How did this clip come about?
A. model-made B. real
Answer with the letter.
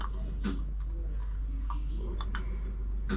B